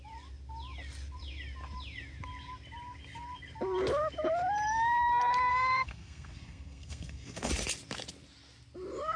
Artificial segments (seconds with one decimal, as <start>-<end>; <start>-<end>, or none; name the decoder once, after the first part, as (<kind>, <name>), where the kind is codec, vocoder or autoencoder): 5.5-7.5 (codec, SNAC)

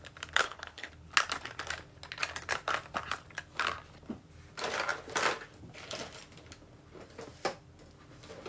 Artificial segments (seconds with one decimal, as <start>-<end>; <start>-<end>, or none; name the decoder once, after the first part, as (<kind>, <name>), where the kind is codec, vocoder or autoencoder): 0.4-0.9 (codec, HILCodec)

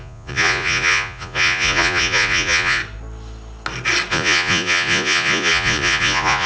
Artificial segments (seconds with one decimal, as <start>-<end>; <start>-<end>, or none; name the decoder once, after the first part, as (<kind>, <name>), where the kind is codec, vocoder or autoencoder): 0.0-2.8 (vocoder, Vocos); 4.1-6.5

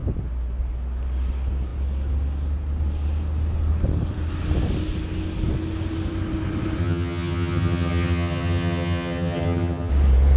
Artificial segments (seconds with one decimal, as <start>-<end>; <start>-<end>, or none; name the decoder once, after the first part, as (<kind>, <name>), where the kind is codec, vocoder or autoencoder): 6.8-9.9 (vocoder, HiFi-GAN)